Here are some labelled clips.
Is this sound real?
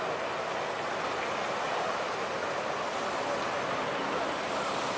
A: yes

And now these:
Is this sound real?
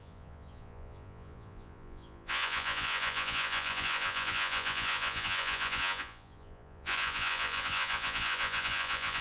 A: no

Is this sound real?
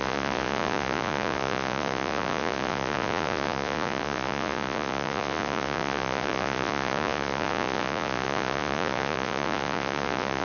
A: no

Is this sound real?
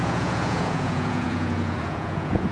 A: no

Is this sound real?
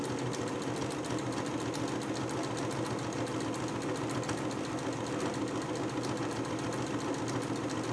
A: yes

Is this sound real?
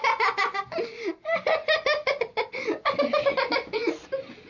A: yes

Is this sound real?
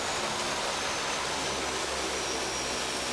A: yes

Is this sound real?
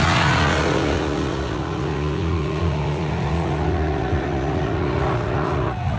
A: no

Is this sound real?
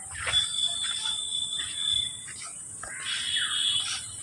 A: yes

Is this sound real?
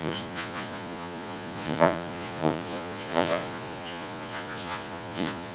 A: no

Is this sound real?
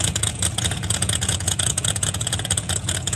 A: no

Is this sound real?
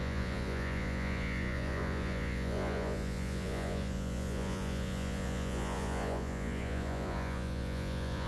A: no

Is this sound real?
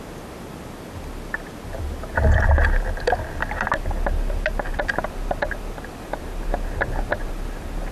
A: yes